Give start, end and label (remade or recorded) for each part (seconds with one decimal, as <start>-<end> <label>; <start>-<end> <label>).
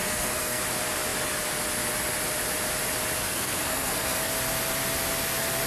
0.0-0.6 remade; 0.6-3.2 recorded; 3.2-4.3 remade; 4.3-5.7 recorded